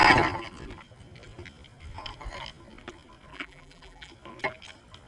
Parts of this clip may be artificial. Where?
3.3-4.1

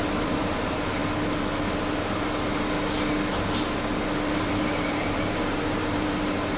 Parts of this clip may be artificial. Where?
0.0-1.0; 4.4-6.6

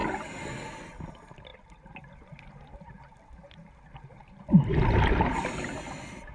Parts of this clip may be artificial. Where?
1.5-2.1

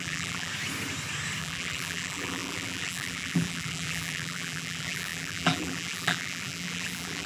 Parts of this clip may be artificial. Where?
0.0-0.5; 1.4-7.3

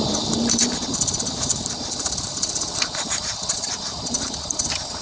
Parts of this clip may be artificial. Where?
0.0-5.0

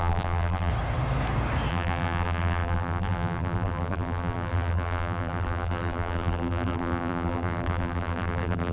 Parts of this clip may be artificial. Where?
0.0-0.7; 1.7-8.7

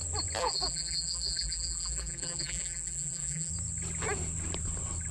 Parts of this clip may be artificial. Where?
0.4-3.5

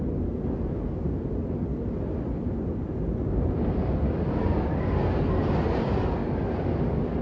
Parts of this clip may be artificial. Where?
none